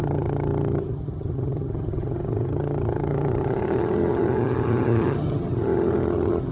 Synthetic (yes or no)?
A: yes